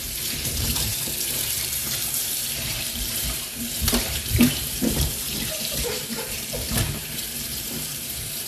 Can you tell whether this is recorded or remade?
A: remade